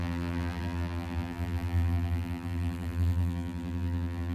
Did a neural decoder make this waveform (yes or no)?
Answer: yes